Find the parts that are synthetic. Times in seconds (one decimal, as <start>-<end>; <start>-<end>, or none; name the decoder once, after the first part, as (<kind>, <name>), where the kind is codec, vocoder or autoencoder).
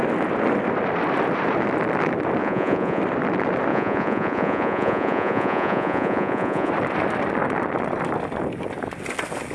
2.4-3.0 (vocoder, Vocos); 3.7-6.7